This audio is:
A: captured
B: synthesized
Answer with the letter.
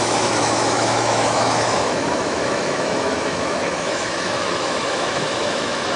B